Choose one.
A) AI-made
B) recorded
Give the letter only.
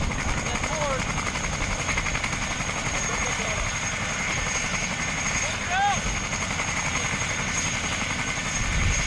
B